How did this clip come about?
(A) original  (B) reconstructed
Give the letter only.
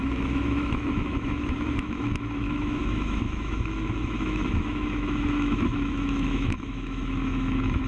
B